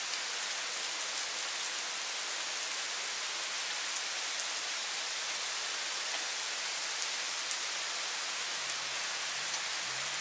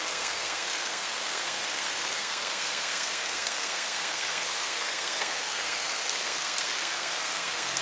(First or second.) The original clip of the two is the first